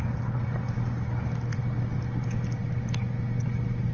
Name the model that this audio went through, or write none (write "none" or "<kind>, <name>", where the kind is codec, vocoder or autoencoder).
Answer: none